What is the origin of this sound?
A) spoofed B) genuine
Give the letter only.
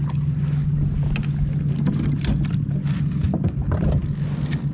B